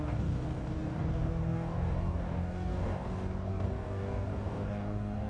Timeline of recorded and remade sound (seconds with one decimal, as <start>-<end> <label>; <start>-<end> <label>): 0.0-5.3 remade